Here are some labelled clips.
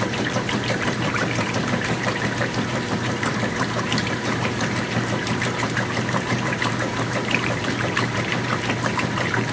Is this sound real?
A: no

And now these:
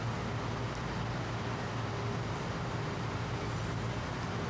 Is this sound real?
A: yes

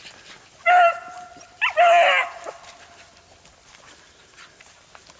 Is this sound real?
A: yes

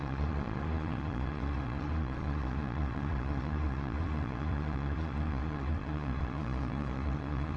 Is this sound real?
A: no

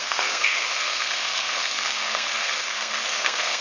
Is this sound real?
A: no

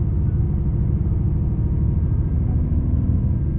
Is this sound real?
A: yes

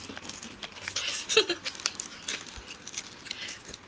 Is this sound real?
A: yes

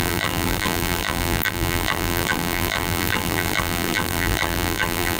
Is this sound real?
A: no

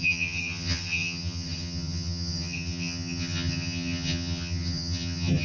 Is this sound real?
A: no